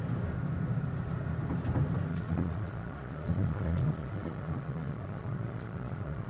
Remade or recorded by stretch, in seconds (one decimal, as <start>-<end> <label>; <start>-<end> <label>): 0.0-2.1 recorded; 2.1-6.3 remade